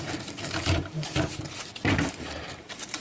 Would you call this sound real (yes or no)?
no